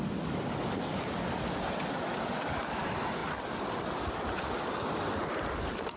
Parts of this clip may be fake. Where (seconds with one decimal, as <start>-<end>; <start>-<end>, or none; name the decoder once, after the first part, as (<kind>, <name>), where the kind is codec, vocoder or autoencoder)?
none